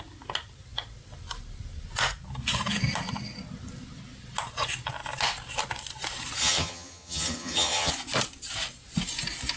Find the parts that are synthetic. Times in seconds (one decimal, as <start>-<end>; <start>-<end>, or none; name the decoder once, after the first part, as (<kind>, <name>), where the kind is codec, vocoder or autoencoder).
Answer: 6.4-7.9 (vocoder, HiFi-GAN)